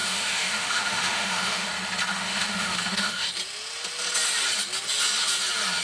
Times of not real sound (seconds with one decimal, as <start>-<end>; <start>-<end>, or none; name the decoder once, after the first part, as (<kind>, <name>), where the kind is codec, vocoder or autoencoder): 0.0-1.7 (autoencoder, DAC-VAE); 2.1-3.3